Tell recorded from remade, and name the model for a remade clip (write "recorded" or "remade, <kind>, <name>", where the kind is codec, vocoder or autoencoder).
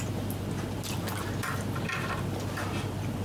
recorded